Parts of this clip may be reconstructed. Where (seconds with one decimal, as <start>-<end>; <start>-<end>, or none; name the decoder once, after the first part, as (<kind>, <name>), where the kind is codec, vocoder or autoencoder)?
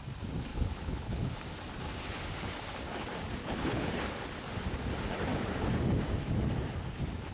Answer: 0.5-1.3 (codec, HILCodec); 3.4-3.9